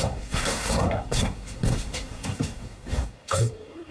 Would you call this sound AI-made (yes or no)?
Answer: yes